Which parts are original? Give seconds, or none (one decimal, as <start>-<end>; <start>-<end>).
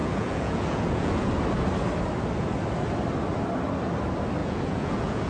1.3-4.4